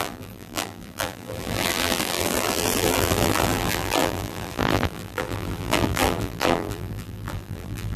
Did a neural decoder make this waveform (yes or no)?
yes